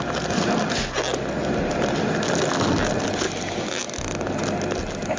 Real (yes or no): yes